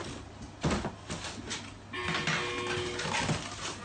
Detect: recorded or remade recorded